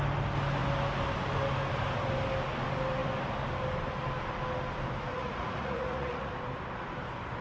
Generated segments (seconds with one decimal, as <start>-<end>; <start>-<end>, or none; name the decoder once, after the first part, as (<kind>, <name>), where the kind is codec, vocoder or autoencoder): 5.1-6.3 (vocoder, Vocos)